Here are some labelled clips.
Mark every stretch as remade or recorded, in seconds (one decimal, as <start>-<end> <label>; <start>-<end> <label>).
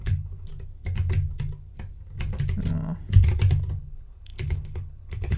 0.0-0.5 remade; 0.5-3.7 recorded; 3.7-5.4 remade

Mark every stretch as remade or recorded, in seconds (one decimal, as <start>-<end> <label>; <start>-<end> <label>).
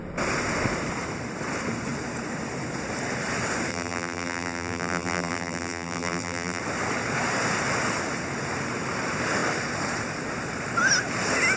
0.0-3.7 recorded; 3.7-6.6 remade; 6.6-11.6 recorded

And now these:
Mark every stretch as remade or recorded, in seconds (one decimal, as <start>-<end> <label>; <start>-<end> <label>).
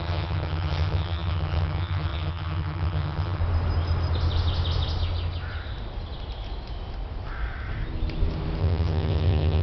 0.0-3.4 remade; 3.4-8.6 recorded; 8.6-9.6 remade